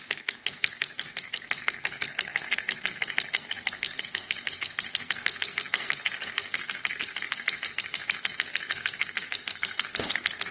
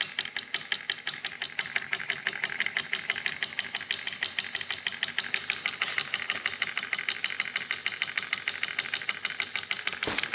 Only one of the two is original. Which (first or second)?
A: second